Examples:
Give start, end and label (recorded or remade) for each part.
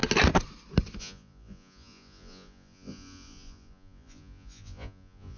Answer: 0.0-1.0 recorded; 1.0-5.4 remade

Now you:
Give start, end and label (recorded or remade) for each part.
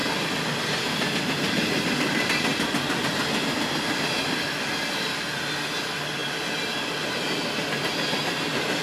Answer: 0.0-2.5 recorded; 2.5-3.6 remade; 3.6-8.8 recorded